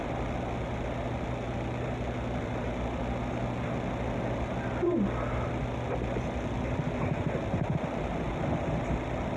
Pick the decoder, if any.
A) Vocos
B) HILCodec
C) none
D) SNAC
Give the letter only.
C